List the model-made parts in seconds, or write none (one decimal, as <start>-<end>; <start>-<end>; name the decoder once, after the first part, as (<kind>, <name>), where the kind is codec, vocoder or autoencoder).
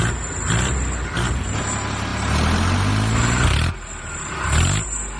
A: none